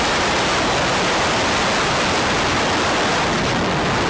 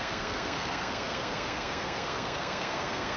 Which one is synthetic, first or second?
second